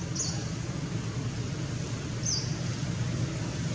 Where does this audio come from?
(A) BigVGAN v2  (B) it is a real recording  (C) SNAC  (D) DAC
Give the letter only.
B